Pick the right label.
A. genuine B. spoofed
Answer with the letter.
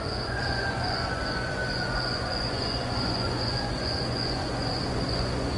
B